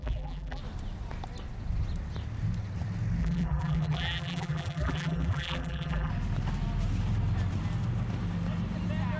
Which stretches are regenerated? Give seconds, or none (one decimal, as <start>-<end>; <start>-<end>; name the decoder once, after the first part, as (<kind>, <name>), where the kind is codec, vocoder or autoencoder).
0.0-0.6 (vocoder, BigVGAN v2); 3.2-6.1